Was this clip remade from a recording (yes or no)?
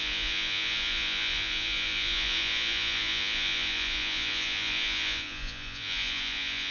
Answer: yes